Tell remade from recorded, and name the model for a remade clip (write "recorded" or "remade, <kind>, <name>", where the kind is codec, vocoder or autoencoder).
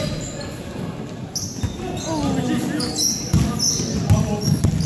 recorded